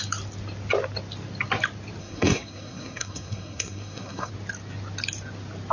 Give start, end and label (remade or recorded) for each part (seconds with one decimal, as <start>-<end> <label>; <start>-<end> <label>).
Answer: 0.0-2.0 recorded; 2.0-4.3 remade; 4.3-5.7 recorded